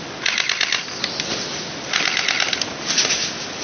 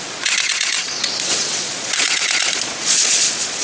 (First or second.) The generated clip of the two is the second